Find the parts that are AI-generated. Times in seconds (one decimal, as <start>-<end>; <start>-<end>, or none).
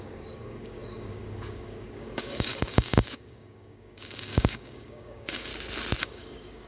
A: 0.0-5.5; 6.0-6.7